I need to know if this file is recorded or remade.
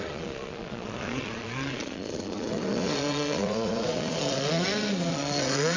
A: remade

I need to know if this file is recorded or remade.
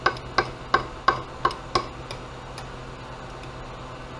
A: recorded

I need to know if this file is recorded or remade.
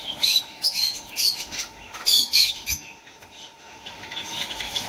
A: remade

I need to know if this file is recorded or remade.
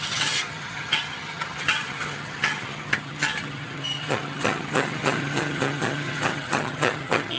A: remade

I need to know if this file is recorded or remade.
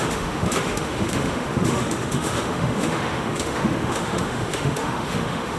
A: remade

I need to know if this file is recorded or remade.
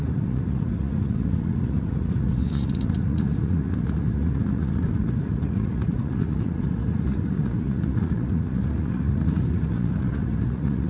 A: remade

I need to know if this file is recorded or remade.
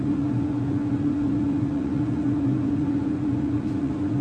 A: remade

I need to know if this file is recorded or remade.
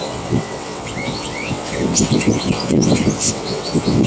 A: remade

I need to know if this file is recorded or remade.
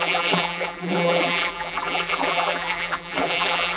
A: remade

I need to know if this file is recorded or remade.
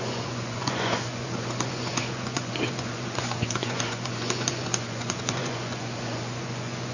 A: remade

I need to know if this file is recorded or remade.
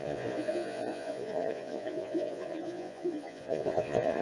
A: remade